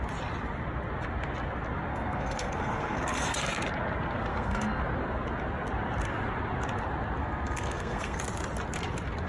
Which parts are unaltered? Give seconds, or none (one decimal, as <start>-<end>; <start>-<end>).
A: 0.0-1.9; 3.5-4.3; 4.8-7.2; 8.2-9.3